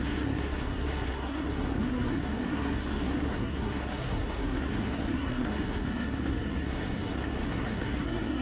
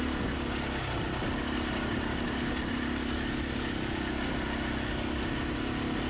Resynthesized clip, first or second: first